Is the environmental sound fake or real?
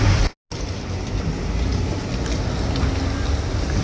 real